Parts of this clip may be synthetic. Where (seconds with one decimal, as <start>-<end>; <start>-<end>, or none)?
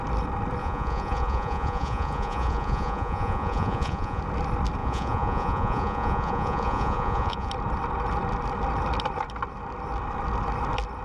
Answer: 0.6-4.2; 4.8-7.5